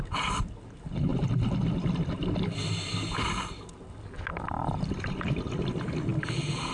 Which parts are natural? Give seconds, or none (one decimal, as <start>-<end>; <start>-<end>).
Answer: 0.0-6.1